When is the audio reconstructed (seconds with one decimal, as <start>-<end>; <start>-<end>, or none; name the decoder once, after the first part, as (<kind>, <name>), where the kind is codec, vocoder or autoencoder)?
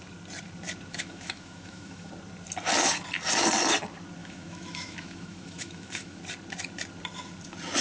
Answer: 0.9-2.1 (autoencoder, DAC-VAE); 4.2-6.2